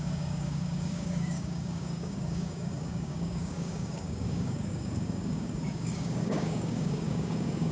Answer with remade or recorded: remade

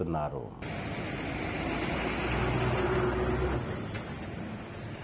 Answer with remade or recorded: recorded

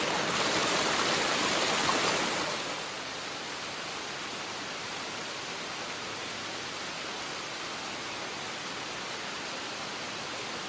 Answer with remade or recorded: recorded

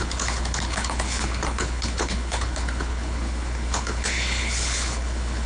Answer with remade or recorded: remade